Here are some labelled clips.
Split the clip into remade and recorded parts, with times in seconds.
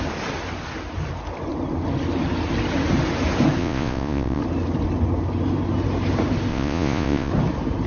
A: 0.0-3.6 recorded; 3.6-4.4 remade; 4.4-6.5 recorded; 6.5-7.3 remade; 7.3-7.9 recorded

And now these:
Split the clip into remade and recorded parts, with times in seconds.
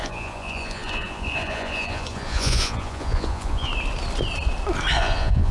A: 0.0-3.7 remade; 3.7-5.0 recorded; 5.0-5.5 remade